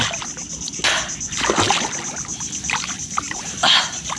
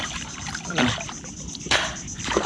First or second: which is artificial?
second